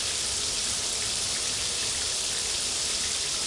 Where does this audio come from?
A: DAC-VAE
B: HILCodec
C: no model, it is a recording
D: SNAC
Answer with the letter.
C